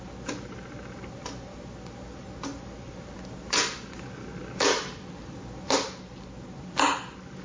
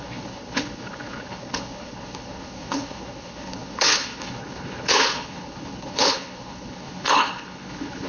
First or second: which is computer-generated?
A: second